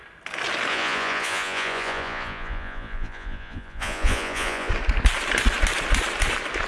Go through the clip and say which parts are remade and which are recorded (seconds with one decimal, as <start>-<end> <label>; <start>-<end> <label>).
0.0-0.7 recorded; 0.7-4.7 remade; 4.7-6.7 recorded